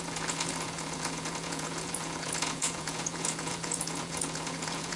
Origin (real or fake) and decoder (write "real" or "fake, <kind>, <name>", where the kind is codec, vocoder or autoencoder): fake, vocoder, Vocos